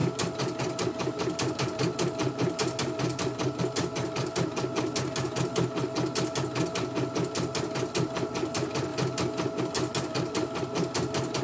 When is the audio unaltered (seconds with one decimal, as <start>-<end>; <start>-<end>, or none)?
0.0-11.4